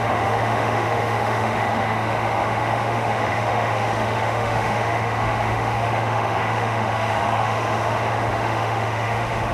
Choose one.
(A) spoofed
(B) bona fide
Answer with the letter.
A